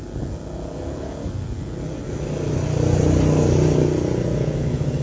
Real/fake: real